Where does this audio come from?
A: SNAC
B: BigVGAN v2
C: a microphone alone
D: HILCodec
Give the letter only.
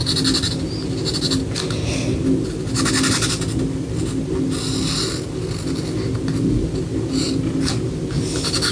C